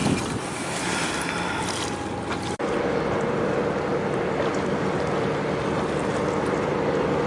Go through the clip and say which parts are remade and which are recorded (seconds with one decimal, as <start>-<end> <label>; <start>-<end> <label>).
0.0-7.3 recorded